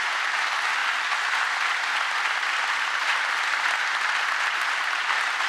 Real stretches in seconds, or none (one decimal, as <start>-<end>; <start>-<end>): 0.0-5.5